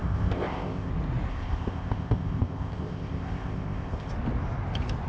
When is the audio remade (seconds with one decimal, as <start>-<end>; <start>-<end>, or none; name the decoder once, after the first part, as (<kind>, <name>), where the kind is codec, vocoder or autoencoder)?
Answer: 0.0-0.9 (codec, ZipCodec); 1.3-4.1